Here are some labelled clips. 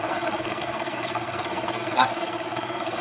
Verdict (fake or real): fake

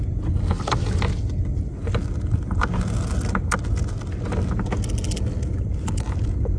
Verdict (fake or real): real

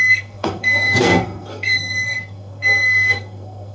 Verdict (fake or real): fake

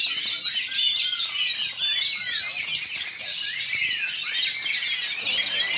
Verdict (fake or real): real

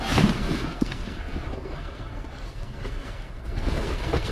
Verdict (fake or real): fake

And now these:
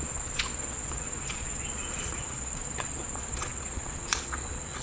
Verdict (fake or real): fake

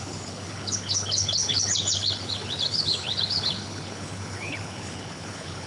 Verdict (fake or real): fake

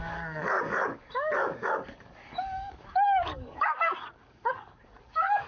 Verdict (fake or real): fake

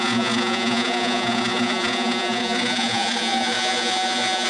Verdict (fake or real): fake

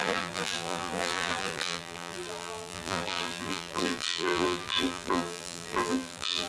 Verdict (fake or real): fake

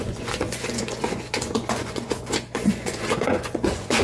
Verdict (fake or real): fake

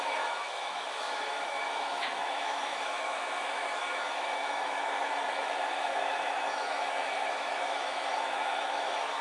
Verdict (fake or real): fake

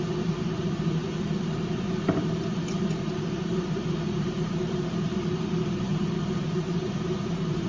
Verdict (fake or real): fake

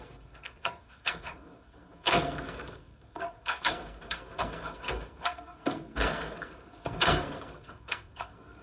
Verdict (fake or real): fake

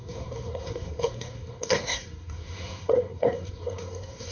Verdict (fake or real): fake